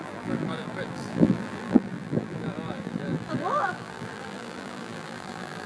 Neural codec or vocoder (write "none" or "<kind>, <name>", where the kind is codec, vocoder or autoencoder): vocoder, BigVGAN v2